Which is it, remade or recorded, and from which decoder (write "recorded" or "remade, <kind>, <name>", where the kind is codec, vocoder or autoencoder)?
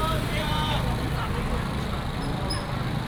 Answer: recorded